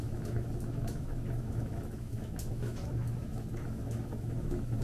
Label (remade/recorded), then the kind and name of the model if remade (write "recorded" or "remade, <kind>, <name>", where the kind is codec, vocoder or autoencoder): remade, autoencoder, DAC-VAE